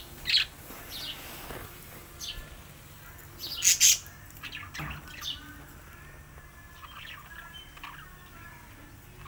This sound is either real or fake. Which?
real